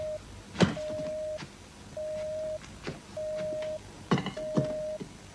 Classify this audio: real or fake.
real